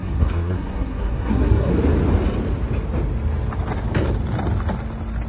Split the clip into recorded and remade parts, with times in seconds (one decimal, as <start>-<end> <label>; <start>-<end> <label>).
0.0-1.7 remade; 1.7-5.3 recorded